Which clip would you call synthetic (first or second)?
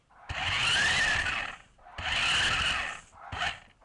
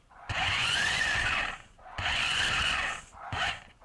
second